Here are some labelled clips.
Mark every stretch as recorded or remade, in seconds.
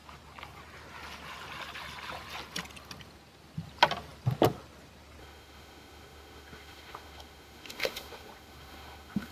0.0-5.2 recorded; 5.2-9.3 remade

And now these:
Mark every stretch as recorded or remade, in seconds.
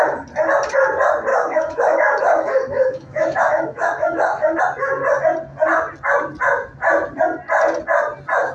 0.0-1.3 recorded; 1.3-4.6 remade; 4.6-8.5 recorded